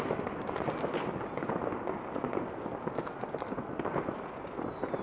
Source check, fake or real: real